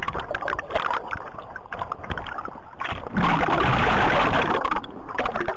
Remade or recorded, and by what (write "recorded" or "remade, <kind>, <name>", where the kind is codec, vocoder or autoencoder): recorded